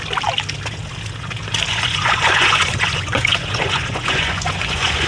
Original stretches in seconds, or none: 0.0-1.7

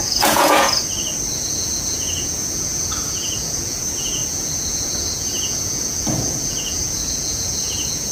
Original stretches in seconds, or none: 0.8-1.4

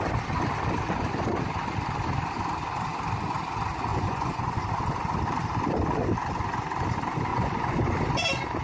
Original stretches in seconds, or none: 0.0-3.9; 4.6-7.3; 7.9-8.6